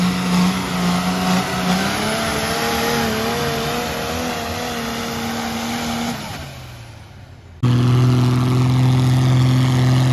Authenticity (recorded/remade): recorded